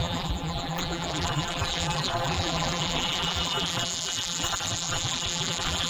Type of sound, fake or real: fake